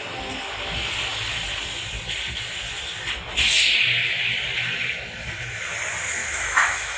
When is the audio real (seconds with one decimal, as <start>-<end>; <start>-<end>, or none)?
0.0-6.2